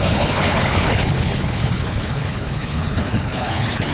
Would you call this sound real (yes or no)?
no